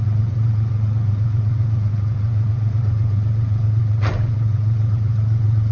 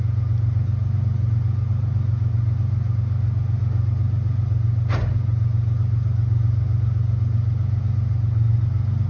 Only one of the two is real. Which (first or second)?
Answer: second